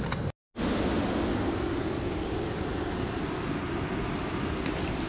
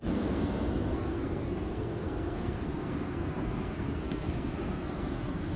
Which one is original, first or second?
first